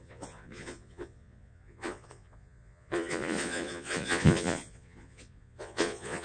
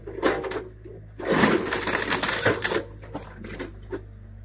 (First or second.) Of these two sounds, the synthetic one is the first